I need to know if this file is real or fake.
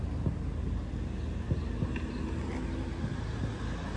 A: real